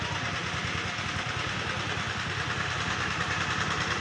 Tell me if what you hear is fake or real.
real